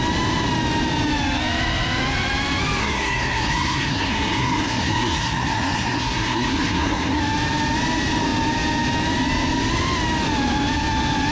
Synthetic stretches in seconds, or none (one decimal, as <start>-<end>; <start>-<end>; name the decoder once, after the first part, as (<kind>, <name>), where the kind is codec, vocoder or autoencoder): 2.8-7.2 (codec, SNAC)